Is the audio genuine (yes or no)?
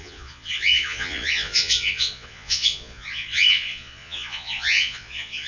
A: no